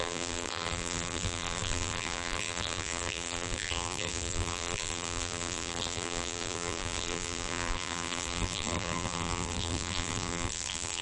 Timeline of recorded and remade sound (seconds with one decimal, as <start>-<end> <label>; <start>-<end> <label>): 0.0-11.0 remade